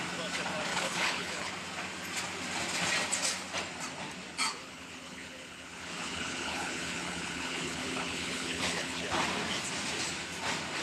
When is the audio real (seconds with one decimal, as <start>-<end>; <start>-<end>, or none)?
0.0-0.7; 1.5-4.5; 9.2-10.8